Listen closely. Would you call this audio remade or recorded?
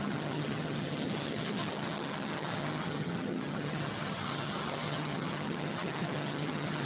remade